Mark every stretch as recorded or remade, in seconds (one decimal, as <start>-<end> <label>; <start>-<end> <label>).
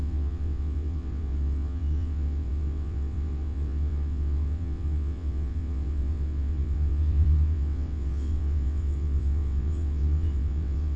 0.0-11.0 remade